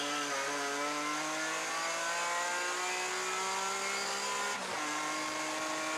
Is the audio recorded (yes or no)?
yes